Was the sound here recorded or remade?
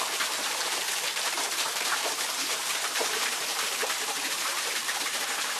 remade